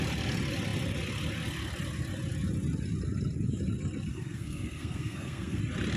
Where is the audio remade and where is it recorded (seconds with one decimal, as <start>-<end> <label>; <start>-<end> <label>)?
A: 0.0-4.1 recorded; 4.1-5.6 remade; 5.6-6.0 recorded

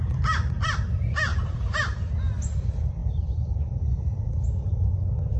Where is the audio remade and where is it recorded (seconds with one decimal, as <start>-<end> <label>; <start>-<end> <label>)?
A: 0.0-1.3 recorded; 1.3-2.1 remade; 2.1-3.0 recorded; 3.0-3.7 remade; 3.7-5.4 recorded